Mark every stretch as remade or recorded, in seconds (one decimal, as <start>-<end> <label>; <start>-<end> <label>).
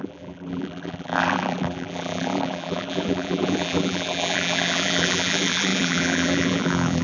0.0-7.0 remade